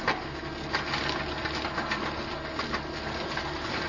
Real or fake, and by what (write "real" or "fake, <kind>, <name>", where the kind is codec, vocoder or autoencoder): real